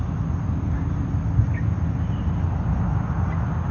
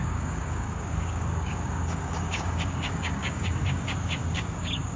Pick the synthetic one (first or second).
second